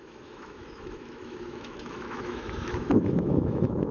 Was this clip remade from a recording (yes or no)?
yes